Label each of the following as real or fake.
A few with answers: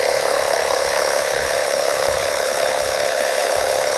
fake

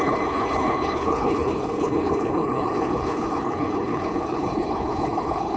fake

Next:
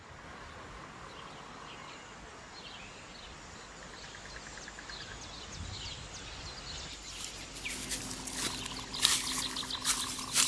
real